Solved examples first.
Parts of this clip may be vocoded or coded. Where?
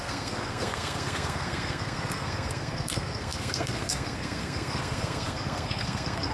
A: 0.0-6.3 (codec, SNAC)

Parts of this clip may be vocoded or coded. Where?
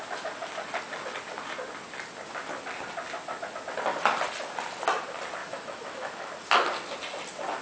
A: 5.4-6.3 (autoencoder, DAC-VAE)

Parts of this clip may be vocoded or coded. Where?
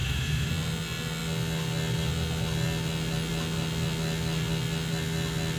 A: 0.0-0.5 (autoencoder, DAC-VAE)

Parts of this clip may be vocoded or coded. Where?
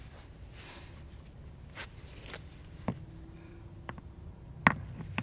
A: 1.8-4.3 (vocoder, BigVGAN v2)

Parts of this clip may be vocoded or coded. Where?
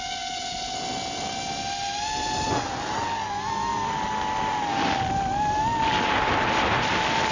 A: 3.7-5.0 (vocoder, BigVGAN v2)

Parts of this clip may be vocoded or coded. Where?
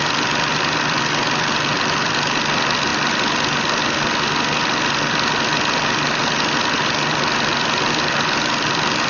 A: none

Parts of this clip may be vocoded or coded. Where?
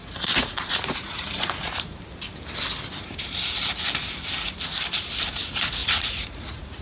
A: 0.0-2.0 (vocoder, Vocos); 5.8-6.8